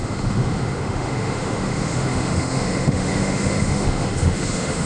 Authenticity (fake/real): fake